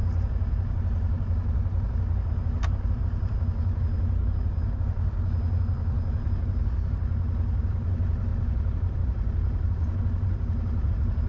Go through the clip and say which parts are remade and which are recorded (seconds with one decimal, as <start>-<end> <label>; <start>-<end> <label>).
0.0-8.3 recorded; 8.3-10.9 remade; 10.9-11.3 recorded